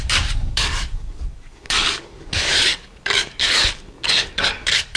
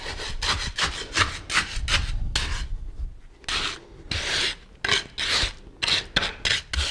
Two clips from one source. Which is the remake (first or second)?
first